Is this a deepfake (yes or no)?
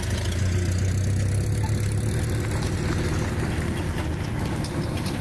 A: no